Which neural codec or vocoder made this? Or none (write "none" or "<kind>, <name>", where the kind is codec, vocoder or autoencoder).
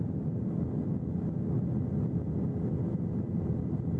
none